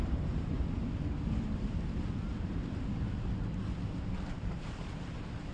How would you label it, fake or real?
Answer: real